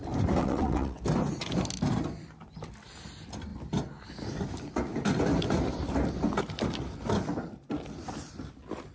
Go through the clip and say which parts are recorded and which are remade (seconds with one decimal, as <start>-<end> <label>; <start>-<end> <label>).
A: 0.0-0.4 recorded; 0.4-1.0 remade; 1.0-8.9 recorded